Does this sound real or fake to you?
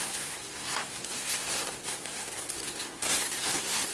fake